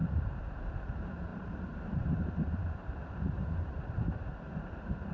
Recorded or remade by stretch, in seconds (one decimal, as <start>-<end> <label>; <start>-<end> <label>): 0.0-5.1 remade